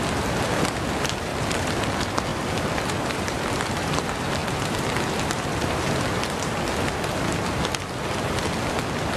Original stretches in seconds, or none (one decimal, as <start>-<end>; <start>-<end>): 0.0-1.3; 1.8-2.3; 4.0-9.2